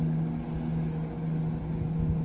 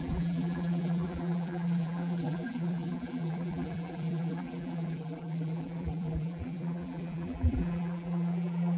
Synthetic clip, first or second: second